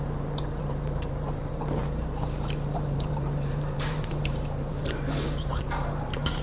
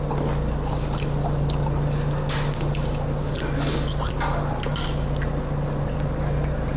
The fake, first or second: first